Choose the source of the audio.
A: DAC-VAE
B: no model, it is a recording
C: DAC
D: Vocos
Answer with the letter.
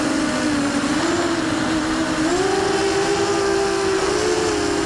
B